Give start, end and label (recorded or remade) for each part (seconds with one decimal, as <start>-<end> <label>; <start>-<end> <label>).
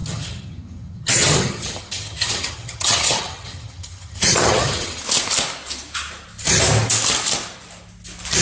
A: 0.0-5.0 remade; 5.0-8.4 recorded